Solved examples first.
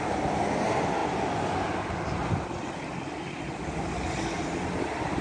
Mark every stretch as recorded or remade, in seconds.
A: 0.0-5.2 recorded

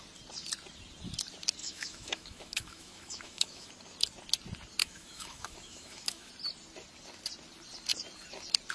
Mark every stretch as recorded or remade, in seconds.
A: 0.0-1.6 recorded; 1.6-3.7 remade; 3.7-4.8 recorded; 4.8-6.3 remade; 6.3-8.7 recorded

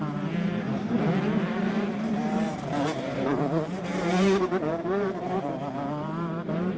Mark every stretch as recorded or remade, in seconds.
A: 0.0-6.8 remade

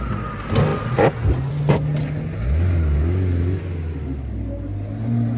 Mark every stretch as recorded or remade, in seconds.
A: 0.0-5.4 recorded

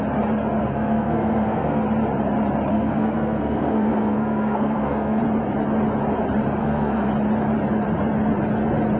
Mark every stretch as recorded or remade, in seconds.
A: 0.0-0.6 recorded; 0.6-1.8 remade; 1.8-2.7 recorded; 2.7-5.2 remade; 5.2-6.6 recorded; 6.6-7.1 remade; 7.1-9.0 recorded

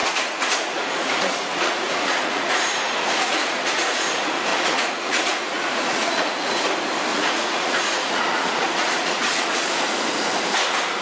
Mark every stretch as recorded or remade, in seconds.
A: 0.0-4.1 remade; 4.1-4.5 recorded; 4.5-6.6 remade; 6.6-7.1 recorded; 7.1-9.7 remade; 9.7-11.0 recorded

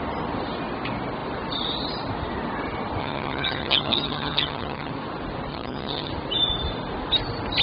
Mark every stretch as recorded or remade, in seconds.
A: 0.0-3.0 recorded; 3.0-4.9 remade; 4.9-5.5 recorded; 5.5-6.1 remade; 6.1-7.6 recorded

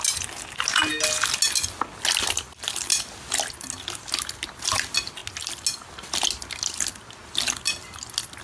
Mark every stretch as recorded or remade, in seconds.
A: 0.0-8.4 recorded